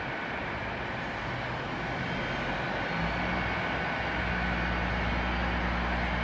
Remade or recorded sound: recorded